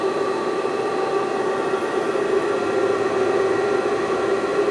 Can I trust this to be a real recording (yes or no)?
yes